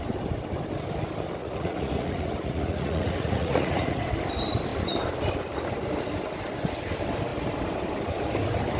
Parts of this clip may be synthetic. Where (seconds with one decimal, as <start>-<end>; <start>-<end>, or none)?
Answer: 1.4-4.0